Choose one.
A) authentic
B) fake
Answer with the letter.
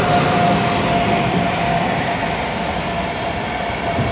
A